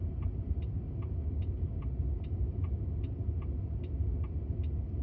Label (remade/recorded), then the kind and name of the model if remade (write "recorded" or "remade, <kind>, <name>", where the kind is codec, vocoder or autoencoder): recorded